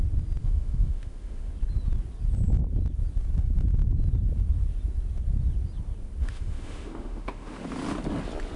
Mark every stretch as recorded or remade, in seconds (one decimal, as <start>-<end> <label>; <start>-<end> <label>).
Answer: 0.0-0.4 recorded; 0.4-1.5 remade; 1.5-6.2 recorded; 6.2-7.6 remade; 7.6-8.6 recorded